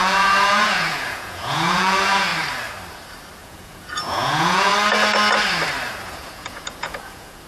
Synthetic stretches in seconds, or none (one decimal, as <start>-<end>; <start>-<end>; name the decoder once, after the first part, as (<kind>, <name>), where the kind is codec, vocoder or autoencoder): 0.0-2.3 (vocoder, Vocos); 3.4-4.7; 5.9-7.5